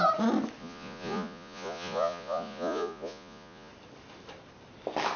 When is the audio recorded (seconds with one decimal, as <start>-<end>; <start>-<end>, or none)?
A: 0.0-0.6; 3.7-5.2